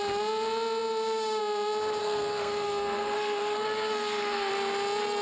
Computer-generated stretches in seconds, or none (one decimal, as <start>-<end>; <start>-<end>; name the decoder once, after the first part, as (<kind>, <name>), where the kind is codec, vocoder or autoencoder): 2.0-4.5 (codec, SNAC)